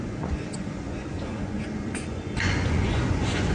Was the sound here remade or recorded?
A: remade